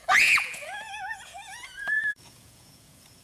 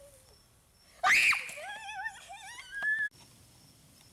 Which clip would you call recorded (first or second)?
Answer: second